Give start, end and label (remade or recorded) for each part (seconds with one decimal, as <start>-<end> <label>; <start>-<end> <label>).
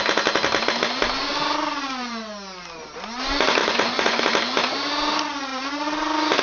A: 0.0-3.6 recorded; 3.6-4.2 remade; 4.2-6.4 recorded